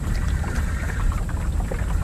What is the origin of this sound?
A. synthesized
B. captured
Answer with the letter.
B